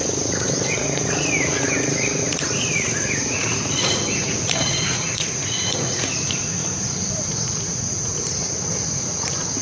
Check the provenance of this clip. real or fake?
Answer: fake